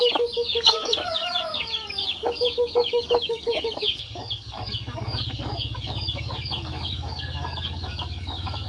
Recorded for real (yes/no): no